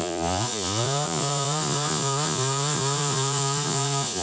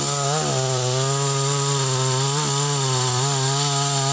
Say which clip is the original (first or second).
second